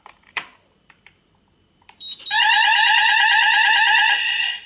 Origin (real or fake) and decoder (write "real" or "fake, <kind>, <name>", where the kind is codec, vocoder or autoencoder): fake, vocoder, BigVGAN v2